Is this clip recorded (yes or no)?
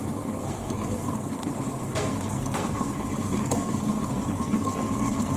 no